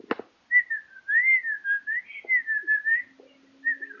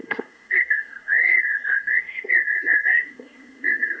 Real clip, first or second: first